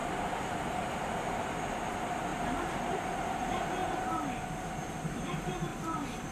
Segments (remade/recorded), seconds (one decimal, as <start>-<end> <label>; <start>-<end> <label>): 0.0-6.3 recorded